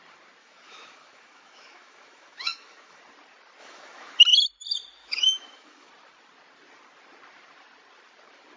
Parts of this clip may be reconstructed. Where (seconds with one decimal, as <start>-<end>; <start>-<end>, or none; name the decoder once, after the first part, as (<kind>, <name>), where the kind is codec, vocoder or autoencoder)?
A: 0.4-3.0 (autoencoder, DAC-VAE); 3.6-4.2; 5.0-5.9